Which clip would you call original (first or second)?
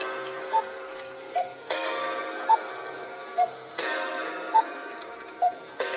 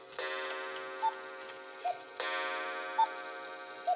second